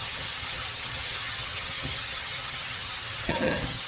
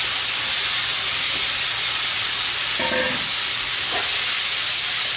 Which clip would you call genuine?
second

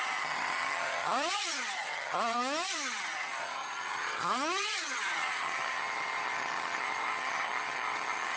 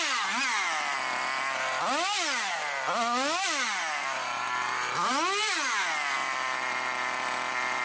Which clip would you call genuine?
second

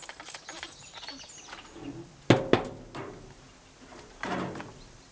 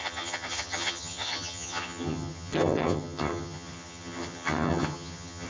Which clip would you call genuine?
first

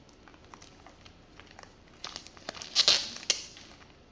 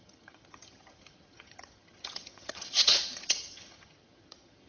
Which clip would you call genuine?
first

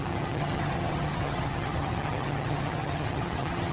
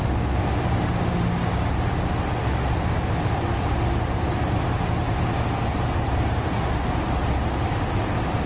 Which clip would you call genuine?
second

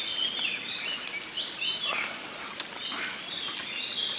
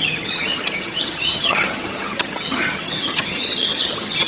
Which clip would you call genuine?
first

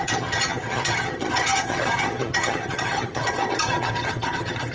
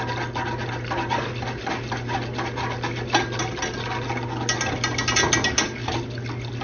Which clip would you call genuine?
second